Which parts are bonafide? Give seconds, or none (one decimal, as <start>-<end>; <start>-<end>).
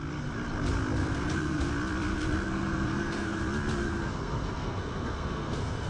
0.0-1.0; 1.7-2.1; 3.4-3.8